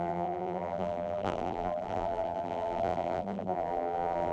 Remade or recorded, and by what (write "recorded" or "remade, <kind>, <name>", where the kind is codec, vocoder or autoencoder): remade, vocoder, BigVGAN v2